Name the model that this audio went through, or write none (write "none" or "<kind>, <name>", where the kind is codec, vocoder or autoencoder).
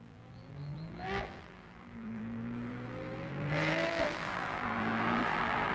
vocoder, BigVGAN v2